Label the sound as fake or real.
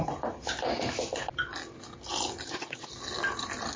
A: real